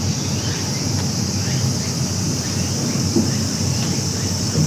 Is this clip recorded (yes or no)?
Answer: yes